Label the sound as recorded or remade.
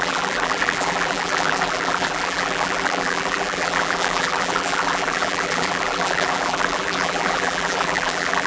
remade